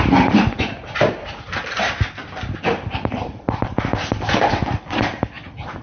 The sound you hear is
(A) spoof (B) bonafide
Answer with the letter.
B